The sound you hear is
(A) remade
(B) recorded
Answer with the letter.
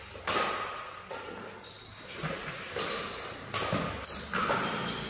B